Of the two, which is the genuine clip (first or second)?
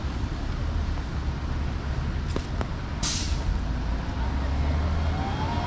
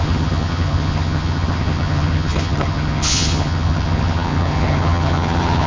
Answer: first